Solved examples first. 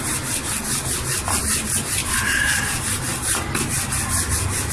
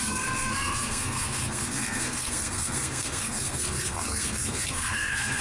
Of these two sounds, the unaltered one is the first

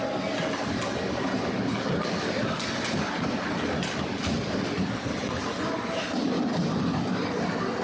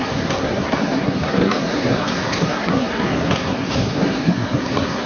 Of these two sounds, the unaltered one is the first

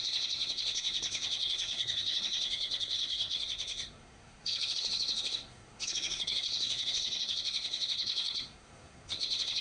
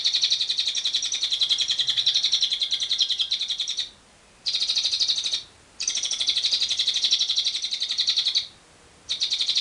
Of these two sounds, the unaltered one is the second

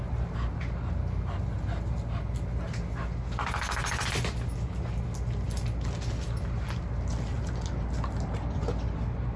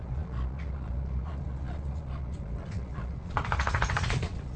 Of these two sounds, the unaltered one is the first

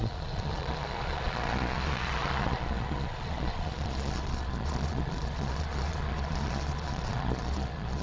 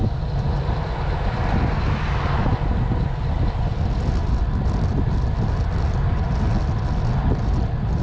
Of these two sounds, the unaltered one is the second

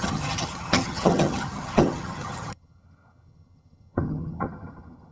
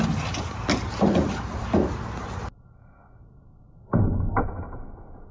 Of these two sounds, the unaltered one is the second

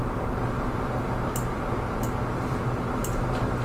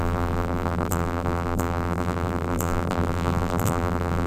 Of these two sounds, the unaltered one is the first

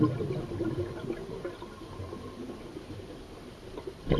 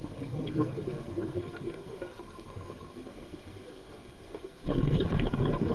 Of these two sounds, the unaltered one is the first